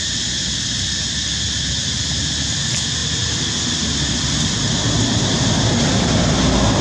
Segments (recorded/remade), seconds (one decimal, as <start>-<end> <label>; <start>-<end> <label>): 0.0-6.8 recorded